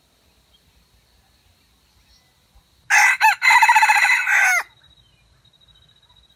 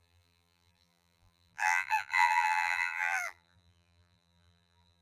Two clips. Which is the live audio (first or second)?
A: first